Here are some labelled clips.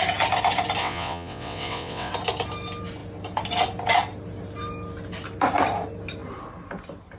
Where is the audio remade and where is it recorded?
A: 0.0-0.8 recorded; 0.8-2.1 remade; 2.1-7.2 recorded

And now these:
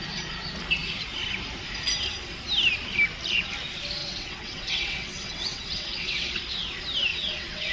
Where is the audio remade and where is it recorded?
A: 0.0-4.0 recorded; 4.0-6.3 remade; 6.3-7.1 recorded; 7.1-7.7 remade

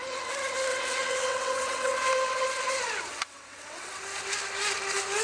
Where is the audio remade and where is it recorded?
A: 0.0-0.7 recorded; 0.7-2.0 remade; 2.0-3.1 recorded; 3.1-4.0 remade; 4.0-5.2 recorded